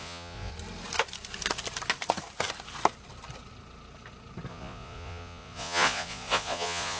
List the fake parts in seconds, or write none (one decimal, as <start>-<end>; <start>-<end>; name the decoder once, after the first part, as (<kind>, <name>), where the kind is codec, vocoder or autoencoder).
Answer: 0.0-0.5 (vocoder, Vocos); 4.5-7.0